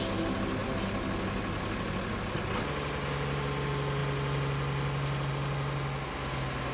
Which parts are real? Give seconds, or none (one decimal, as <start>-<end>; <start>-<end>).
0.0-6.7